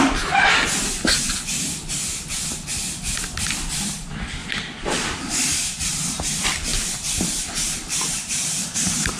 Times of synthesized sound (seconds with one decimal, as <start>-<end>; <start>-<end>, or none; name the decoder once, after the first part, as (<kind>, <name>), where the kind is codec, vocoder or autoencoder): 1.5-2.4 (vocoder, BigVGAN v2); 4.4-5.5; 6.7-9.2

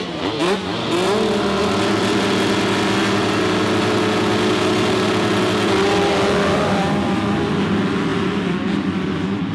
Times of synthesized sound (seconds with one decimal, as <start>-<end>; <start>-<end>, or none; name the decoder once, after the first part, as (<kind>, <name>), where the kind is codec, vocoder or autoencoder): none